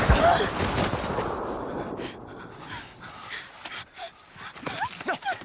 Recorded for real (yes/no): yes